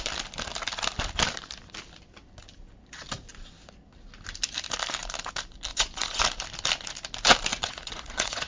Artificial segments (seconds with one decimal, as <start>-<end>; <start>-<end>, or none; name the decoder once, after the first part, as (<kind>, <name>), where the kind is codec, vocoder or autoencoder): 5.7-6.2 (vocoder, Vocos); 7.5-8.5